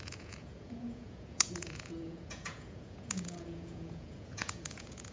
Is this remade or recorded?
remade